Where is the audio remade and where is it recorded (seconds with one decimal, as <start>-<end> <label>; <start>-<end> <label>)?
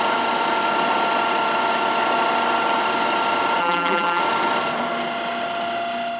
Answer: 0.0-3.6 recorded; 3.6-4.2 remade; 4.2-6.2 recorded